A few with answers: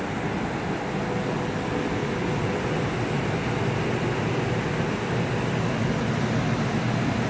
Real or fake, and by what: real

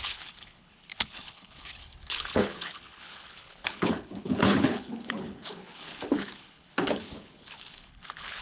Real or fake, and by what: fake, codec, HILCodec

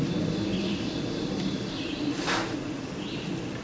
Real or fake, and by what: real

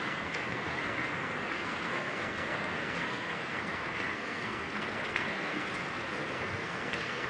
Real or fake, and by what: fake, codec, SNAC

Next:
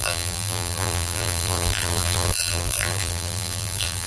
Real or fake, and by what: fake, vocoder, BigVGAN v2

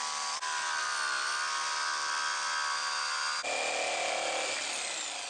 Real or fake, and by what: real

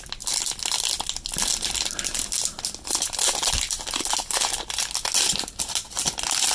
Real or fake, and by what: real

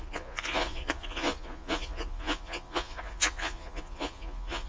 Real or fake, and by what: fake, vocoder, Vocos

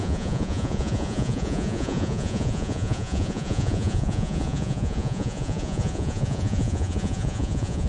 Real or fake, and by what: fake, vocoder, Vocos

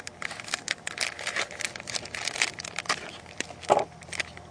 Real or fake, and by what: real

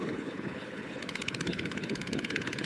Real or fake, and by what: fake, codec, HILCodec